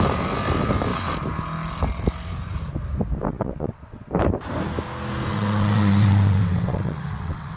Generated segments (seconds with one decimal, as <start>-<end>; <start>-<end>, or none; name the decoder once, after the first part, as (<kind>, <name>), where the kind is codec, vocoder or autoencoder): 3.3-4.1 (vocoder, WaveNeXt); 5.3-7.6